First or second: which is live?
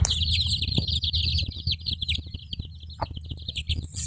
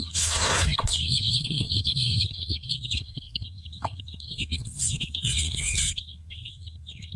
first